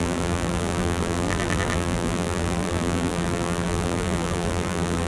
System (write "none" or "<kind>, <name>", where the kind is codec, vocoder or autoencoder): vocoder, BigVGAN v2